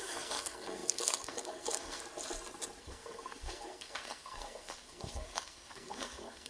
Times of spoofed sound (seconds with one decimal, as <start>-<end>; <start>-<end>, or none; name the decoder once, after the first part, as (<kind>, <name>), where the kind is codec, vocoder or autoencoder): 0.0-2.0 (codec, SNAC); 2.8-6.5